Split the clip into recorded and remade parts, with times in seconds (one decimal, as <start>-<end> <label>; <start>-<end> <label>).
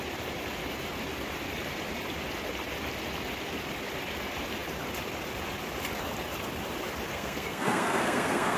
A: 0.0-7.1 recorded; 7.1-8.6 remade